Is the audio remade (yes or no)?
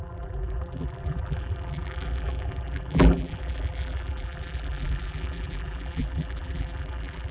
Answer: yes